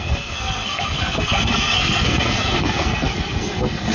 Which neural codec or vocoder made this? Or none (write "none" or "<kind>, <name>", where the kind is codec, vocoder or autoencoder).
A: codec, SNAC